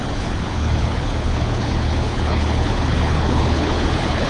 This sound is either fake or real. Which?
fake